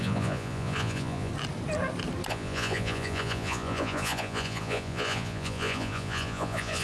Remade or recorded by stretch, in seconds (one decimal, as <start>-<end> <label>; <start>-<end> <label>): 0.0-1.3 remade; 1.3-2.3 recorded; 2.3-6.8 remade